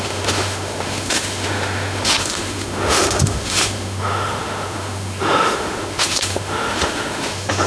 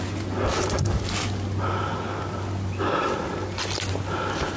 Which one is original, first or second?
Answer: second